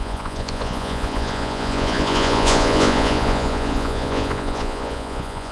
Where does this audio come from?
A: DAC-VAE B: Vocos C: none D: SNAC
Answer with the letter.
B